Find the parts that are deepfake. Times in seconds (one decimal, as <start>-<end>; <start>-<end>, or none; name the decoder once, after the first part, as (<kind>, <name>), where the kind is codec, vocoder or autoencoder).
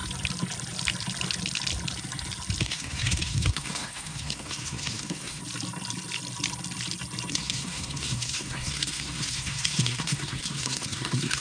2.6-5.4 (codec, SNAC); 7.3-11.4